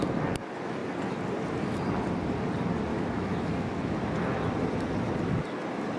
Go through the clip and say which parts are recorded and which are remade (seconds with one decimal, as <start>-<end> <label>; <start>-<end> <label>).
0.0-2.9 recorded; 2.9-3.7 remade; 3.7-6.0 recorded